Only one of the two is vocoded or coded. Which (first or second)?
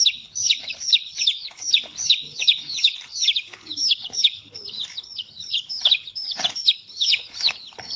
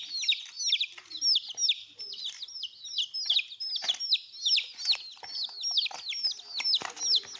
first